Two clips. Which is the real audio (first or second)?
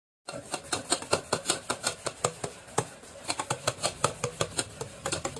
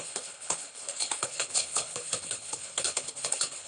first